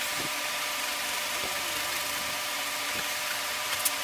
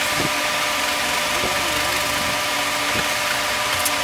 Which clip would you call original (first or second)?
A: second